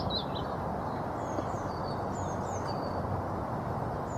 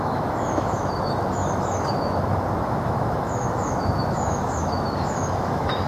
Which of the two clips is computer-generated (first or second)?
second